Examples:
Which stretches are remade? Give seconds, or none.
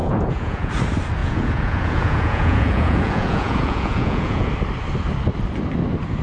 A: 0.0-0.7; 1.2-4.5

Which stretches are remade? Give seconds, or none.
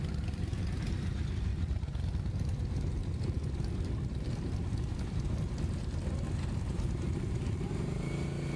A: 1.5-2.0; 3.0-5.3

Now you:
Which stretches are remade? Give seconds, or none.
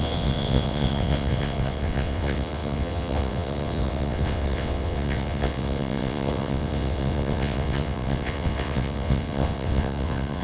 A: 0.0-10.4